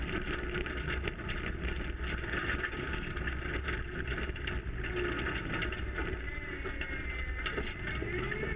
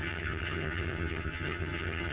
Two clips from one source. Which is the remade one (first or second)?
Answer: second